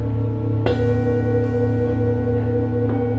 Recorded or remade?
recorded